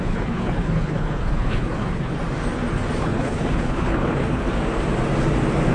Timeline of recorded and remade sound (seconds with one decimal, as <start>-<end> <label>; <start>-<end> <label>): 0.0-2.1 remade; 2.1-3.0 recorded; 3.0-4.4 remade; 4.4-5.7 recorded